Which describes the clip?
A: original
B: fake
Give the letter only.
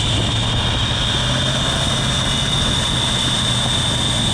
A